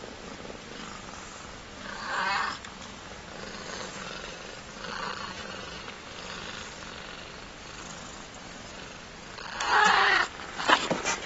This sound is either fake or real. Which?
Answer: real